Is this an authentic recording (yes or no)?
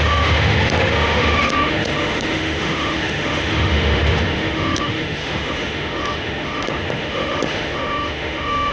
no